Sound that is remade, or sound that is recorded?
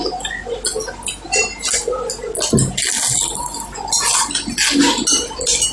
recorded